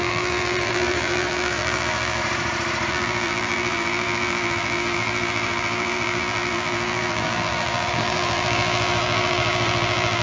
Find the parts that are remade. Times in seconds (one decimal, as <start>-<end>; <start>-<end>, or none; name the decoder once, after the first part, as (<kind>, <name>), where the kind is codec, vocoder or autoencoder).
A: 0.0-2.2 (vocoder, BigVGAN v2); 2.9-10.2